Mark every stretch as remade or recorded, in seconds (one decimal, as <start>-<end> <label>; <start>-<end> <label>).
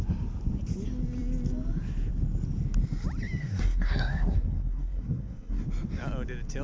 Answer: 0.0-3.4 recorded; 3.4-5.6 remade; 5.6-6.6 recorded